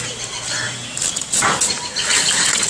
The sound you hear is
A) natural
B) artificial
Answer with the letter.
A